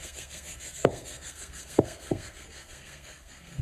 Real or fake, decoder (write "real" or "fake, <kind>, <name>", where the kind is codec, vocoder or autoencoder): fake, codec, SNAC